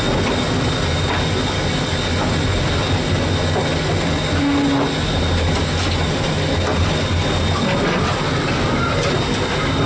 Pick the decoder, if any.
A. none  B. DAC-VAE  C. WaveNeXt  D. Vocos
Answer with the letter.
A